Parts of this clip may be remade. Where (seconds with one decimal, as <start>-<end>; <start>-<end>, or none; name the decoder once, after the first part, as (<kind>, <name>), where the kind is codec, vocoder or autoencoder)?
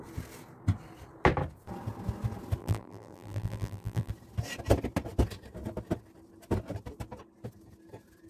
2.6-4.1 (vocoder, BigVGAN v2)